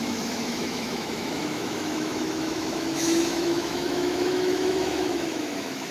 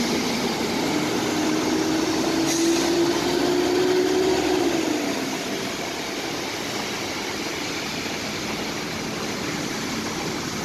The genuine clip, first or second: second